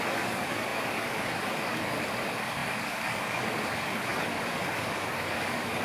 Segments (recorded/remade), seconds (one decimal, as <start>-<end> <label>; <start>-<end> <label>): 0.0-5.8 remade